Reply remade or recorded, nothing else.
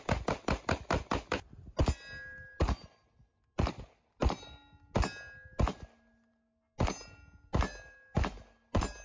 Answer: recorded